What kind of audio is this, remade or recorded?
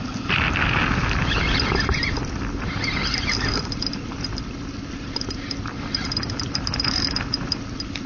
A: recorded